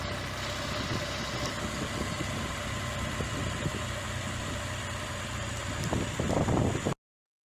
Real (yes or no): yes